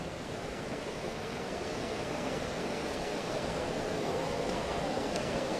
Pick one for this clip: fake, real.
fake